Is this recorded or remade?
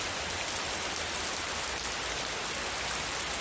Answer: recorded